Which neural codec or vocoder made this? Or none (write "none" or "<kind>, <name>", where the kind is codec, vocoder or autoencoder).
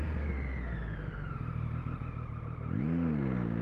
none